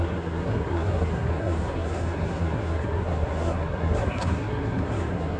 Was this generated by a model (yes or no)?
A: yes